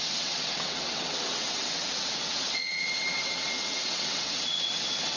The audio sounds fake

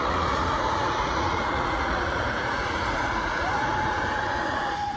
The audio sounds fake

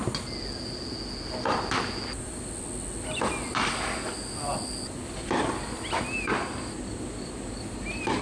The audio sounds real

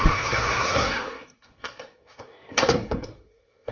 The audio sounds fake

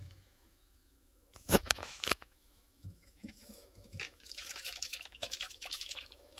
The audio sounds fake